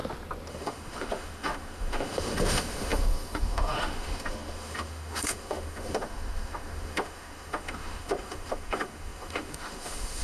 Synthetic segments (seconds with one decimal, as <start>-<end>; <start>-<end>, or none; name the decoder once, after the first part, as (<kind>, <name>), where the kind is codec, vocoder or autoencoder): 0.5-10.2 (autoencoder, DAC-VAE)